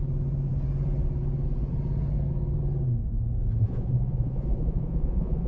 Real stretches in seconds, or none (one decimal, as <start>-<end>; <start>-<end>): 0.0-3.6